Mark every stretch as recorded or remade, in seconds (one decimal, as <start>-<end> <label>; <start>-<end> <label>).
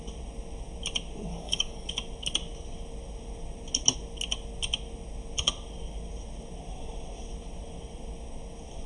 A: 0.0-1.3 recorded; 1.3-1.9 remade; 1.9-8.9 recorded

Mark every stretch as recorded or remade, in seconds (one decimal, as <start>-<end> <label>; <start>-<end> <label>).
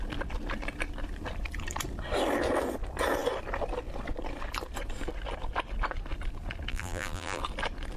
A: 0.0-6.7 recorded; 6.7-7.4 remade; 7.4-8.0 recorded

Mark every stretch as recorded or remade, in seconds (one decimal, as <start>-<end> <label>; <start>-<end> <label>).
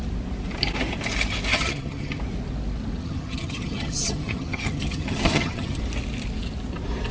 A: 0.0-1.5 recorded; 1.5-2.2 remade; 2.2-3.0 recorded; 3.0-5.8 remade; 5.8-7.1 recorded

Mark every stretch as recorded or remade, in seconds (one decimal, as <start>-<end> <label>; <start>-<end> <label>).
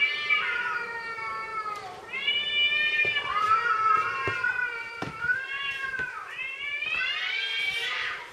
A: 0.0-8.3 remade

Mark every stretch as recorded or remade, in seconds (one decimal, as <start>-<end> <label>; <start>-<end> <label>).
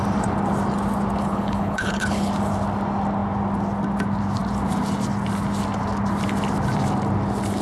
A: 0.0-1.2 recorded; 1.2-2.3 remade; 2.3-7.6 recorded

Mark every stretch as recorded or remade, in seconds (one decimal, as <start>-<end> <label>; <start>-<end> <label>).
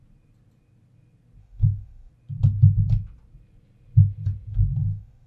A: 0.0-1.4 recorded; 1.4-2.1 remade; 2.1-4.5 recorded; 4.5-5.3 remade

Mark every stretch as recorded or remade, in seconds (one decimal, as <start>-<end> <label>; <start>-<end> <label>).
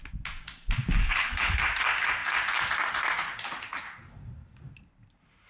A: 0.0-1.0 recorded; 1.0-1.6 remade; 1.6-5.5 recorded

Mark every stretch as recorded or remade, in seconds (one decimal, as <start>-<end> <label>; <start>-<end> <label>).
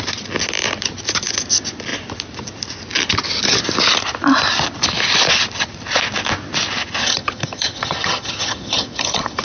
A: 0.0-7.0 recorded; 7.0-9.4 remade